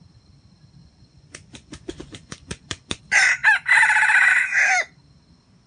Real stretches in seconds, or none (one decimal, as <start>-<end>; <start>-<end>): 0.0-0.8; 3.0-5.7